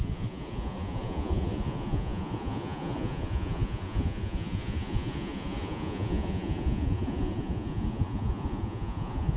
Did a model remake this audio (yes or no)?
yes